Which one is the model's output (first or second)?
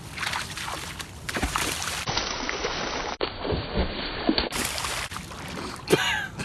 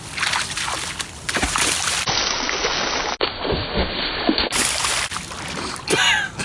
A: first